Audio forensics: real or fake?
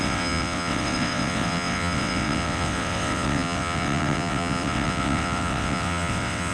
fake